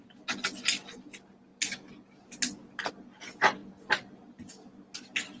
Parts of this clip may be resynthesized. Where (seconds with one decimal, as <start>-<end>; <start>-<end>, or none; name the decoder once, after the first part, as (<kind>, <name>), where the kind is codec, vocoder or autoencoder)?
none